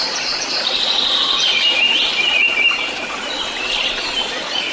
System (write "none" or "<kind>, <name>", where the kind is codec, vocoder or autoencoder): none